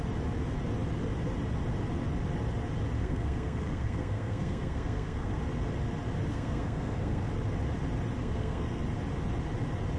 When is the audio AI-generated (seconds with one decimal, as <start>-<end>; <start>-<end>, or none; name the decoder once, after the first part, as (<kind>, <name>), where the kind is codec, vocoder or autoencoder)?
3.0-5.4 (codec, SNAC); 6.3-7.3; 8.2-8.8